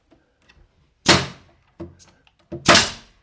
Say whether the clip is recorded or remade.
recorded